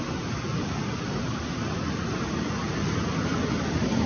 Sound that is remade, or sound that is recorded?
recorded